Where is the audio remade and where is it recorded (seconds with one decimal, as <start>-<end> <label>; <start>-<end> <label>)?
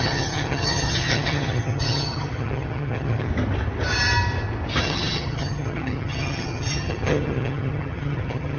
0.0-3.3 remade; 3.3-4.8 recorded; 4.8-8.6 remade